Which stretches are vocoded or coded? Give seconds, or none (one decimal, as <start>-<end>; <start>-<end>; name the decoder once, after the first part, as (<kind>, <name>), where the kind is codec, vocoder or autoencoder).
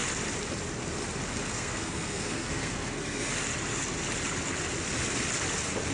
1.5-3.3 (codec, SNAC)